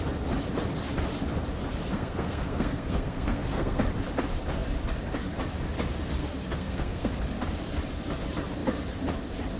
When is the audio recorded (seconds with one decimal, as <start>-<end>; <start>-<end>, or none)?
0.0-1.9; 3.8-6.2; 7.1-9.6

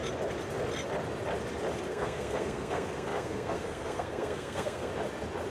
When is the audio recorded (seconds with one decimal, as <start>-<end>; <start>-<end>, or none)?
0.0-1.9; 4.9-5.5